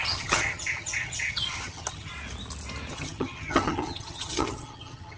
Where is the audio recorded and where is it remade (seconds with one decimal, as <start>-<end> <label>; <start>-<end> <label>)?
0.0-2.1 remade; 2.1-2.9 recorded; 2.9-5.2 remade